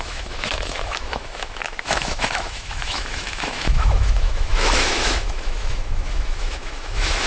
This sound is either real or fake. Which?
fake